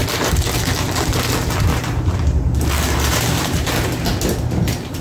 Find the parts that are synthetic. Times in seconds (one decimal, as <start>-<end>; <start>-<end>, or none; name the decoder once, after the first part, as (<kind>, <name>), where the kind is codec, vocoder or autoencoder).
1.7-3.7 (vocoder, BigVGAN v2)

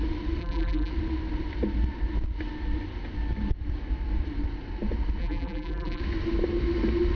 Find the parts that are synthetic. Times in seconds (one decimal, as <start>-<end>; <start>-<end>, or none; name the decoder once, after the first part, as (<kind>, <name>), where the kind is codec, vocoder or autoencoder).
0.4-0.9 (vocoder, BigVGAN v2); 5.2-6.0

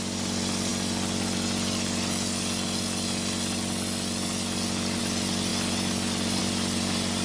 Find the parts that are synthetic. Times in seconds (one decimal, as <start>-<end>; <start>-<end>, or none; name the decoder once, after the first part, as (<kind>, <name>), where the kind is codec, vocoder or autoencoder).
0.0-0.7 (vocoder, BigVGAN v2); 5.0-7.2

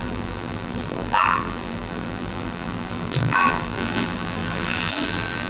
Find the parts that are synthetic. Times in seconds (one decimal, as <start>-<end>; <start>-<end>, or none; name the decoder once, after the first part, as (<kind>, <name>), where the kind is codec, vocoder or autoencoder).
0.0-5.5 (vocoder, BigVGAN v2)

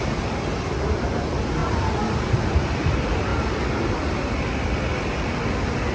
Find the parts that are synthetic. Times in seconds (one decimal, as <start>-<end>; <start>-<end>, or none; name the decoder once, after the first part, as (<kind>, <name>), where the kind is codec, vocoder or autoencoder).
none